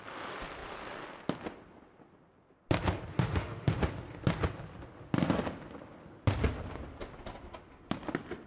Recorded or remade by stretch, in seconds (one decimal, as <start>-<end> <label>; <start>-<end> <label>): 0.0-3.1 recorded; 3.1-3.7 remade; 3.7-8.5 recorded